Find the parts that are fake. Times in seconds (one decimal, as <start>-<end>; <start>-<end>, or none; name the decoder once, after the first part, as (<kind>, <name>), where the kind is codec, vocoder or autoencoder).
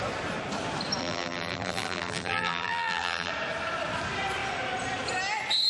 1.0-3.3 (vocoder, BigVGAN v2)